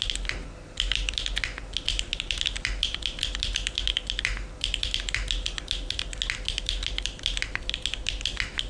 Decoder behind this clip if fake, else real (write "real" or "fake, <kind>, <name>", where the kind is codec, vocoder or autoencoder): real